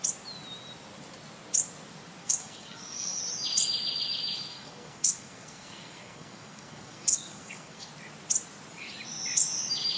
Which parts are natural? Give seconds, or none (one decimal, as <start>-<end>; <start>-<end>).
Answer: 0.0-2.2; 3.2-4.5; 7.9-10.0